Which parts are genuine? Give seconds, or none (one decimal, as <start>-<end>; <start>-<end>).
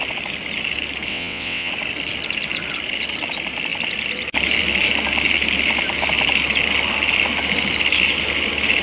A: 0.0-1.1; 1.7-8.8